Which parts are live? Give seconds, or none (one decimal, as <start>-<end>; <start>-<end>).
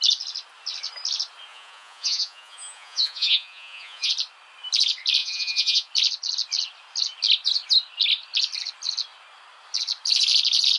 0.0-1.5; 4.1-5.2; 5.9-10.8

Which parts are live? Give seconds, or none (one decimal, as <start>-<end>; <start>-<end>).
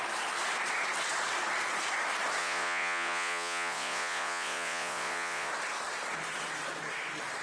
0.0-2.4; 5.5-7.4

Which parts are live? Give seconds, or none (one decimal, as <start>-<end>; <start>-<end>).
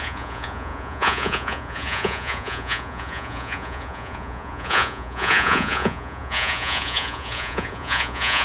none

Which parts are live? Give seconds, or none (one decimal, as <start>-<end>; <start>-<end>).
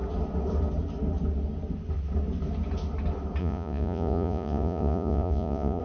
0.0-3.4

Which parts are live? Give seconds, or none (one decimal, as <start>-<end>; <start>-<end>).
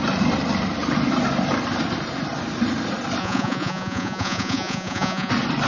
0.0-3.2; 5.3-5.7